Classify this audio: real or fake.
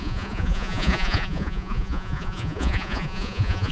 fake